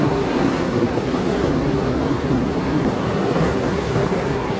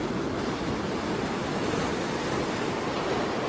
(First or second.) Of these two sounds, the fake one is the first